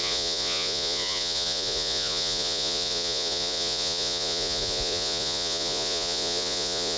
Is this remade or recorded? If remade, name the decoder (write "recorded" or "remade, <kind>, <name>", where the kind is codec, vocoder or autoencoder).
remade, vocoder, Vocos